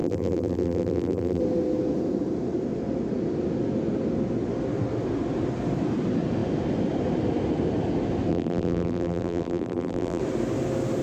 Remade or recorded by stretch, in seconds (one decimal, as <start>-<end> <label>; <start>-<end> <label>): 0.0-1.4 remade; 1.4-8.3 recorded; 8.3-10.2 remade; 10.2-11.0 recorded